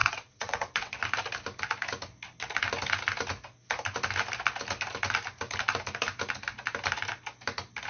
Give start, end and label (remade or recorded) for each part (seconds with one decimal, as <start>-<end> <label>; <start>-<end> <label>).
0.0-1.0 remade; 1.0-7.9 recorded